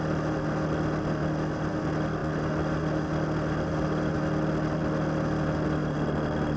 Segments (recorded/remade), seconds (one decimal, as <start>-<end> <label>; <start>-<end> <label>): 0.0-6.6 recorded